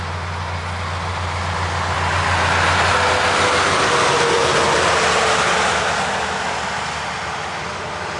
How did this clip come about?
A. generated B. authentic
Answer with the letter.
B